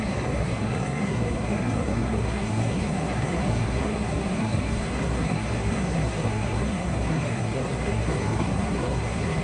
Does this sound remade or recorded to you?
remade